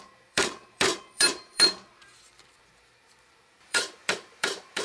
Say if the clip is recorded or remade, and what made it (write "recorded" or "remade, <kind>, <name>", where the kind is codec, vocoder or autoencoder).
remade, vocoder, BigVGAN v2